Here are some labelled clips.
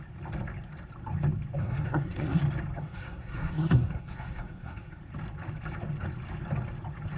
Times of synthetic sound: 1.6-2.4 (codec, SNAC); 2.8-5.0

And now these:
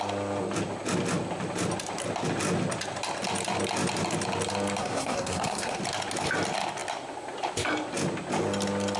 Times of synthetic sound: 4.8-5.8 (codec, SNAC)

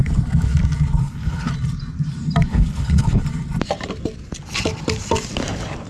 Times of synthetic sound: 1.0-1.5 (codec, HILCodec); 2.5-3.2

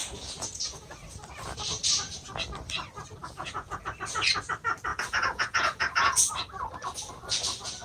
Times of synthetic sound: 0.0-1.0 (vocoder, Vocos); 3.2-3.8; 4.9-6.3

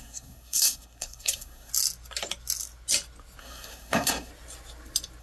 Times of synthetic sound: 0.0-1.7 (codec, SNAC); 3.4-4.3

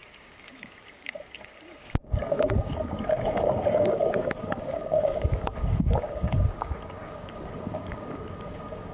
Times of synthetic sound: 0.0-8.9 (codec, DAC)

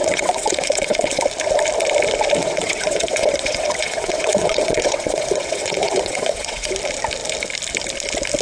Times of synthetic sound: 0.0-1.2 (vocoder, WaveNeXt); 2.4-6.7